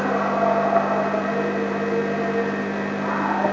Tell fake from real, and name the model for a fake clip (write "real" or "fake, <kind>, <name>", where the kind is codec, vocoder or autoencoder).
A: fake, vocoder, BigVGAN v2